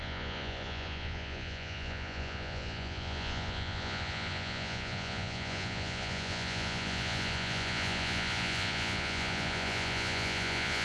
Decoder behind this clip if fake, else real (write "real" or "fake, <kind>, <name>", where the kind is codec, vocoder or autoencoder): fake, vocoder, Vocos